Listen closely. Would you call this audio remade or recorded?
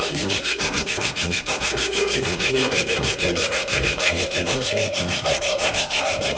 remade